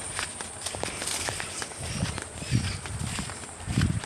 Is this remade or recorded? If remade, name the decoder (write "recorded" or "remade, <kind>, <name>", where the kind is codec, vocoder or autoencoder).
recorded